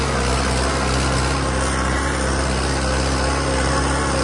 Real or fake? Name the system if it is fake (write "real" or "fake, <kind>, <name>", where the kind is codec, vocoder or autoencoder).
real